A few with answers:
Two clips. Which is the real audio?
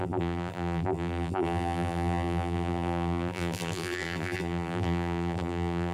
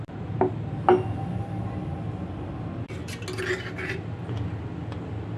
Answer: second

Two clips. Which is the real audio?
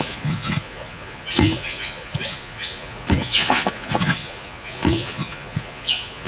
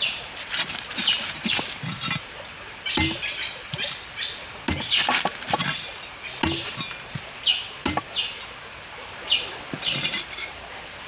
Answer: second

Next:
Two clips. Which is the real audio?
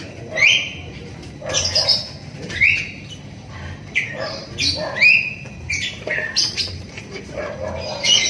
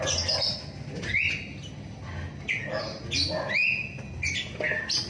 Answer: second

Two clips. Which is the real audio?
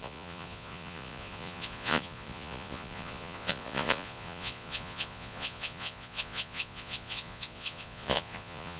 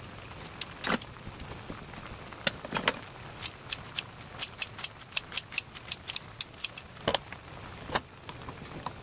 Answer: second